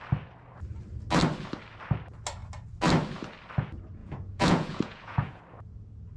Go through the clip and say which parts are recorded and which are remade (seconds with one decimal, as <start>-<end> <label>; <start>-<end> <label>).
0.0-4.0 recorded; 4.0-5.4 remade; 5.4-6.2 recorded